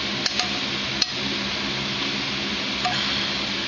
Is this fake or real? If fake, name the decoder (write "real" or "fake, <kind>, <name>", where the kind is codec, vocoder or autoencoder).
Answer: real